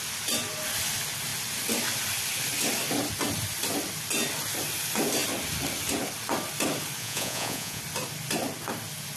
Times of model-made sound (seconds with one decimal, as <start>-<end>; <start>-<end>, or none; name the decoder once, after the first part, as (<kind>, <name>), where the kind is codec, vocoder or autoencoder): 7.0-7.8 (vocoder, Vocos)